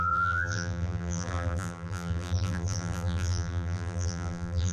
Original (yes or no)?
no